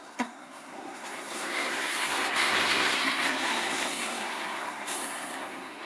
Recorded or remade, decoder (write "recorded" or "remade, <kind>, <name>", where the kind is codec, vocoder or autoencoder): remade, codec, SNAC